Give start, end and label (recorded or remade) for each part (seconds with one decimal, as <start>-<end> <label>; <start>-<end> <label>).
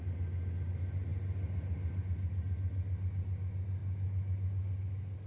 0.0-5.3 recorded